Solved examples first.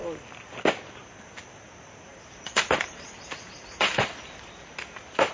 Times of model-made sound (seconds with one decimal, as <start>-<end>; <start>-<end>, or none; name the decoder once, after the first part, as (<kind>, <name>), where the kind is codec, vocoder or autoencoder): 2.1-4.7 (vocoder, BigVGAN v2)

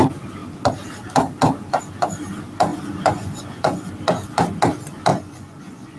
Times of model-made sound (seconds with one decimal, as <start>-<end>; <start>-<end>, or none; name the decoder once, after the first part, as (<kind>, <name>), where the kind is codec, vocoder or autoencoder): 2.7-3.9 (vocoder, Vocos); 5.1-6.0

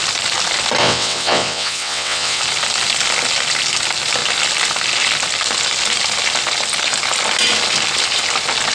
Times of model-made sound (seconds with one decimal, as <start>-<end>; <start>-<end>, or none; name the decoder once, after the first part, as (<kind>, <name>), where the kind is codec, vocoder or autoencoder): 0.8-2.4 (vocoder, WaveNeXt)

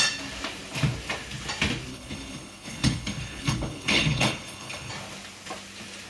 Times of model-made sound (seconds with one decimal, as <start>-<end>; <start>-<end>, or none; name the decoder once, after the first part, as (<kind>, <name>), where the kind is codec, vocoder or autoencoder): 1.9-4.9 (codec, HILCodec)